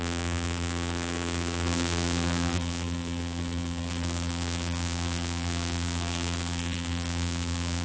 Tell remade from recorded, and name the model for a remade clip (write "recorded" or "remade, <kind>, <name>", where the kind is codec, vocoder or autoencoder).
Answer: remade, vocoder, BigVGAN v2